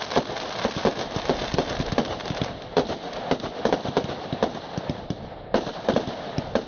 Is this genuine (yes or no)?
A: yes